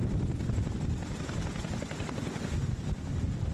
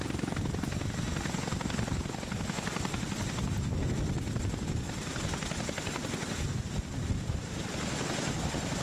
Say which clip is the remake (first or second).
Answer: first